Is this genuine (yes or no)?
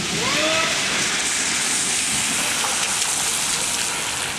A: yes